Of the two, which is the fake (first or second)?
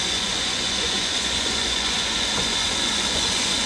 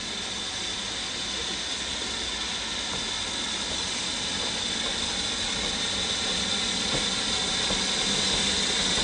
first